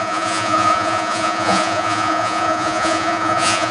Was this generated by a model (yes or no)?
yes